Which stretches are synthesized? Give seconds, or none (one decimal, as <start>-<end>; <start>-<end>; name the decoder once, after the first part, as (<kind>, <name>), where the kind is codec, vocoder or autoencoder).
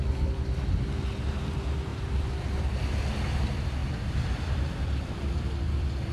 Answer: 3.8-6.1 (vocoder, BigVGAN v2)